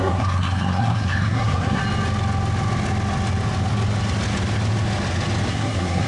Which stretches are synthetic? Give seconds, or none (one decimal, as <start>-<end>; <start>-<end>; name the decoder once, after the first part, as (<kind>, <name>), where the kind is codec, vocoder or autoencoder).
0.0-1.8 (codec, SNAC); 5.5-6.1